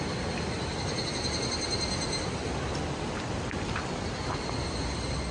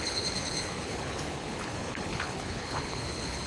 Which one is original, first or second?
first